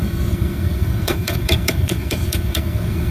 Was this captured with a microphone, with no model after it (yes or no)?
no